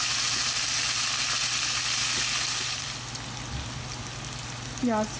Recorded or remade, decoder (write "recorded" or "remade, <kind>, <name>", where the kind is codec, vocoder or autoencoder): recorded